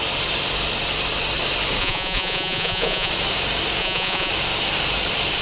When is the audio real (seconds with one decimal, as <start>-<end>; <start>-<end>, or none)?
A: 0.0-1.8; 3.1-3.8; 4.3-5.4

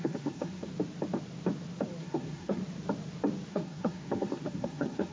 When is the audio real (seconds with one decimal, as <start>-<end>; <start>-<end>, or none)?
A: 0.7-2.0; 2.6-3.5

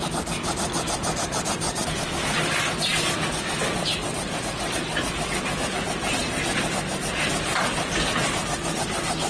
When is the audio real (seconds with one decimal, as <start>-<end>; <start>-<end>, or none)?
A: 0.0-9.3

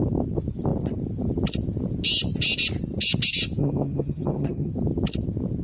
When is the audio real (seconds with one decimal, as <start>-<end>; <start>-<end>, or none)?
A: 0.0-3.6; 4.7-5.6

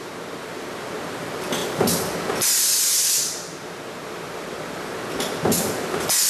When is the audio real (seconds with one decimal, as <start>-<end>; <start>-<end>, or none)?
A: 0.0-6.3

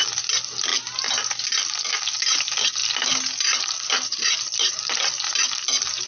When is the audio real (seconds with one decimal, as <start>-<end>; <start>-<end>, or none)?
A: 0.0-2.8; 5.4-6.1